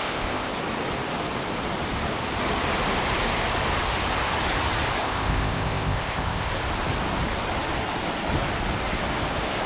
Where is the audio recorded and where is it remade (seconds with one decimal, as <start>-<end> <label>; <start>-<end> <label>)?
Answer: 0.0-0.5 remade; 0.5-5.0 recorded; 5.0-6.5 remade; 6.5-9.7 recorded